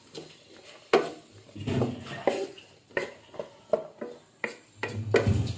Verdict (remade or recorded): recorded